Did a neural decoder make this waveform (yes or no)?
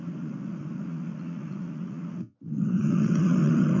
yes